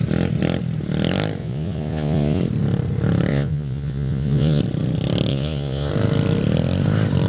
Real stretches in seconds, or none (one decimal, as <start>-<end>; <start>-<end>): 0.0-1.4; 2.4-3.3; 4.6-5.3; 5.9-7.3